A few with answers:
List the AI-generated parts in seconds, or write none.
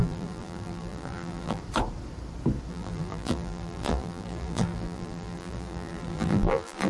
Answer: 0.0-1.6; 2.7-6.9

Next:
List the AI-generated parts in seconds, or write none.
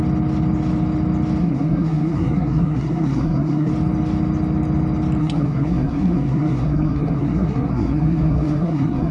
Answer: 1.4-3.7; 5.2-9.1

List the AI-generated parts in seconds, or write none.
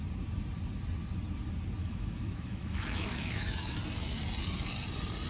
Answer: 1.8-3.8